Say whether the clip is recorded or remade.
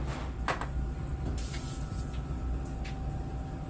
recorded